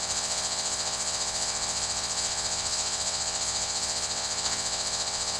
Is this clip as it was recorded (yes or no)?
no